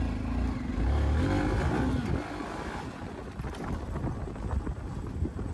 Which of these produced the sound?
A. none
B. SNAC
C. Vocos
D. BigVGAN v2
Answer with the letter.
A